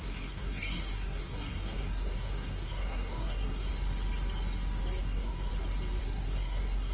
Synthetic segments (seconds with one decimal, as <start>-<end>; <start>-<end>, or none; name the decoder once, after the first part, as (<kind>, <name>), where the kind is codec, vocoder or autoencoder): 0.0-3.7 (codec, SNAC); 5.0-5.5; 6.0-6.9